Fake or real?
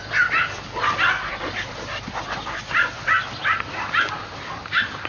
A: real